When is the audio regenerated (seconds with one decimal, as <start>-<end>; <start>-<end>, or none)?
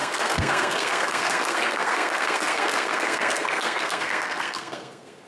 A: 0.0-5.3